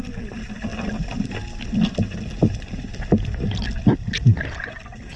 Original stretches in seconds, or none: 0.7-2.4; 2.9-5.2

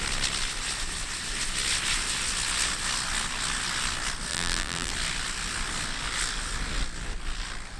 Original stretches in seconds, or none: 0.0-4.3; 4.9-7.8

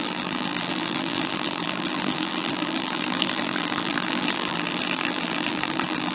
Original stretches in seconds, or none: none